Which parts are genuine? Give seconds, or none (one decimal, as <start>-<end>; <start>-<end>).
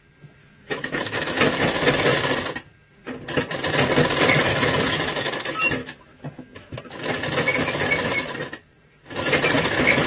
0.0-0.4; 1.4-4.5; 5.3-5.8; 6.8-10.1